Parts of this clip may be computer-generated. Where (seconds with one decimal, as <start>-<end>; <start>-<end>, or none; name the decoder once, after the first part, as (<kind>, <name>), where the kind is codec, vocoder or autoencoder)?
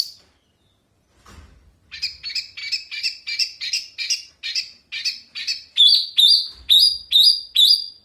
2.6-4.3 (vocoder, BigVGAN v2)